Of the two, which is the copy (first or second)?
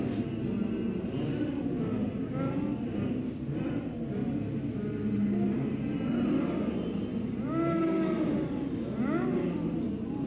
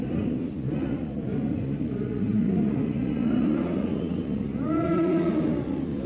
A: second